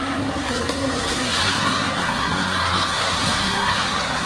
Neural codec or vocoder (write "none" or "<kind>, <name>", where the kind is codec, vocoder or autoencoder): codec, SNAC